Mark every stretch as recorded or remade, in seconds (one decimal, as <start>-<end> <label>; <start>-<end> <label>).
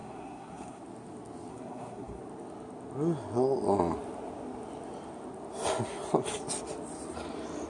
0.0-0.8 remade; 0.8-1.5 recorded; 1.5-2.2 remade; 2.2-7.7 recorded